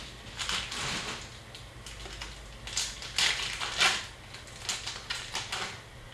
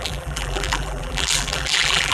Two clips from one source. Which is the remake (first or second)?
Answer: second